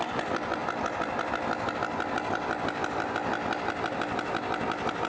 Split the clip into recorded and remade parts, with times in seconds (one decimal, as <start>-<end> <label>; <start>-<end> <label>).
0.0-0.6 recorded; 0.6-1.3 remade; 1.3-5.1 recorded